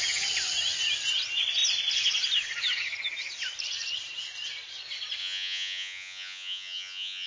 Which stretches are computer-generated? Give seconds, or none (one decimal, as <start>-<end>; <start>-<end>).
5.2-7.3